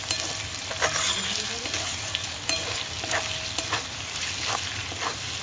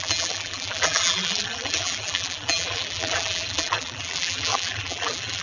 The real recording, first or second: first